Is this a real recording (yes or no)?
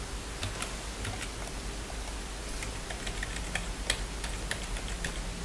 yes